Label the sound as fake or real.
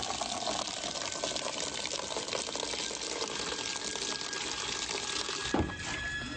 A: real